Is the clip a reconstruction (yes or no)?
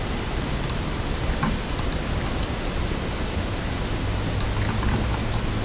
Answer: no